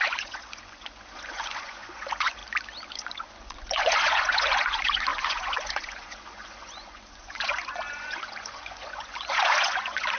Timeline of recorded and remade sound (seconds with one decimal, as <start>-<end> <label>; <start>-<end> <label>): 0.0-2.4 remade; 2.4-2.9 recorded; 2.9-10.2 remade